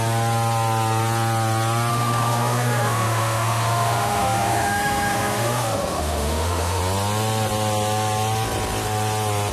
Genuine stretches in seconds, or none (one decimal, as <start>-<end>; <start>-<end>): 0.0-1.9; 6.8-9.5